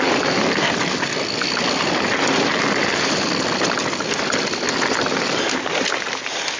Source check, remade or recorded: recorded